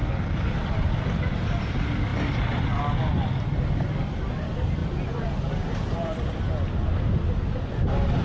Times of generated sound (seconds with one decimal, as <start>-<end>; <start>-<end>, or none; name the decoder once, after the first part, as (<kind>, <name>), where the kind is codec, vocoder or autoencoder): 2.1-2.8 (vocoder, BigVGAN v2); 4.8-6.4